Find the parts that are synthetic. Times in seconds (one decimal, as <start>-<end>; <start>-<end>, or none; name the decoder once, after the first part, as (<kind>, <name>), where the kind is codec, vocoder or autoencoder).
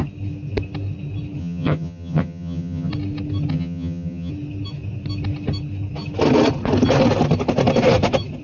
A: 1.4-2.9 (vocoder, HiFi-GAN); 3.5-4.3